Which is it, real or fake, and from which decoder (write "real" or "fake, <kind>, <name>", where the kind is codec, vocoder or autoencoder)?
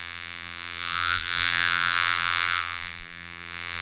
fake, vocoder, BigVGAN v2